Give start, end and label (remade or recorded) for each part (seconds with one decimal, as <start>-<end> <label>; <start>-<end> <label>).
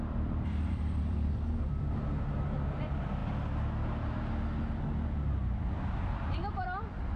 0.0-3.2 remade; 3.2-7.2 recorded